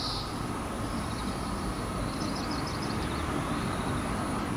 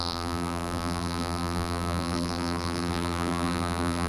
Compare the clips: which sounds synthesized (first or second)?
second